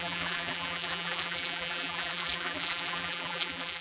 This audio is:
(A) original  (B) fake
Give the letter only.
B